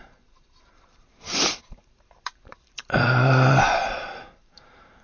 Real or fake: fake